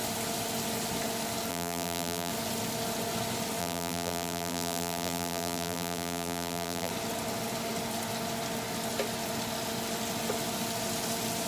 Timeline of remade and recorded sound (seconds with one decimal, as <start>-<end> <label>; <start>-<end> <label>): 0.0-1.5 recorded; 1.5-2.3 remade; 2.3-3.6 recorded; 3.6-6.9 remade; 6.9-11.5 recorded